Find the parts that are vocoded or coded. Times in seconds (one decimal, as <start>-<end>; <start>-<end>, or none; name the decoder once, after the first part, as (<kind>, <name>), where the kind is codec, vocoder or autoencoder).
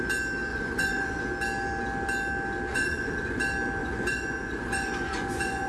0.5-1.2 (vocoder, Vocos); 2.7-3.4; 3.8-5.7